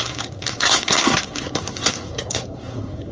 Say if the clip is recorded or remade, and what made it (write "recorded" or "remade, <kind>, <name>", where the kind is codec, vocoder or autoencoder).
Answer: remade, codec, SNAC